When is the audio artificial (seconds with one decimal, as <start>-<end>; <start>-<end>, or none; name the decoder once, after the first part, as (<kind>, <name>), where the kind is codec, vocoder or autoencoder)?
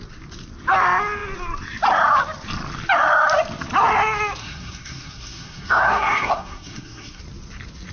4.4-7.2 (codec, SNAC)